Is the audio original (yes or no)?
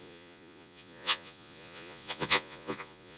no